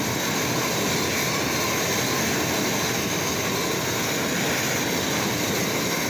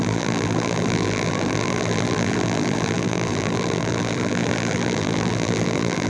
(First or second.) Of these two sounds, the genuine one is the first